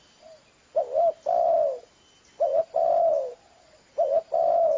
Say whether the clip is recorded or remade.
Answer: recorded